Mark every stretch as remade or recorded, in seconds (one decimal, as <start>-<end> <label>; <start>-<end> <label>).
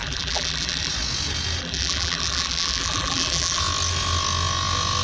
0.0-0.9 remade; 0.9-1.6 recorded; 1.6-3.6 remade; 3.6-5.0 recorded